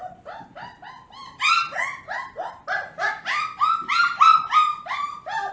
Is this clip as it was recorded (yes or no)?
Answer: yes